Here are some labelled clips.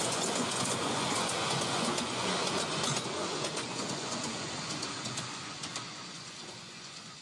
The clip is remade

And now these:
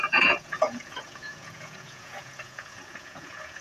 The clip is remade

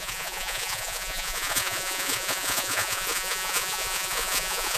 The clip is remade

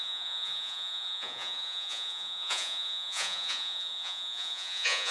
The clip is remade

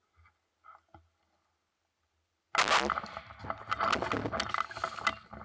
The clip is recorded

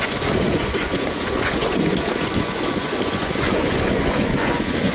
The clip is remade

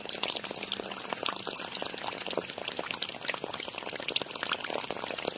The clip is recorded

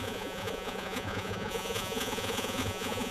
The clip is remade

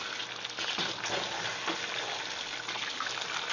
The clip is recorded